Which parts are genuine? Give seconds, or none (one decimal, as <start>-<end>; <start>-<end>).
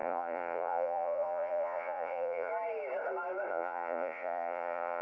2.5-3.5